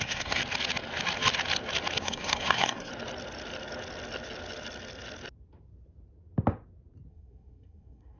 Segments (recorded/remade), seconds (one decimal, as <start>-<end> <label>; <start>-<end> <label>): 0.0-0.4 remade; 0.4-2.0 recorded; 2.0-2.9 remade; 2.9-7.1 recorded; 7.1-8.2 remade